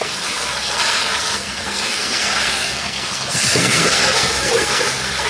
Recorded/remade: remade